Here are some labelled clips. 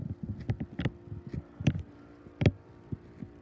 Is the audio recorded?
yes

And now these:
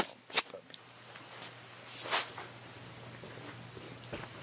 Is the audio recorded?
yes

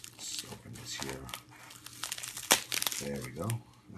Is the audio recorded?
yes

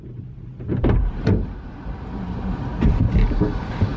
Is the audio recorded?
yes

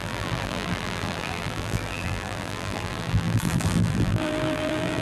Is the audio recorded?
no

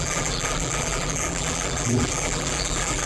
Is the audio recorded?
no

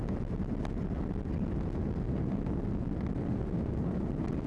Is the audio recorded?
yes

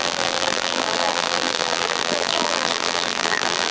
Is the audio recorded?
no